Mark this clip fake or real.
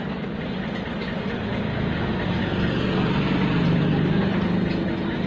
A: real